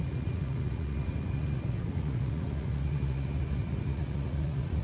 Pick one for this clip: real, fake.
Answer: fake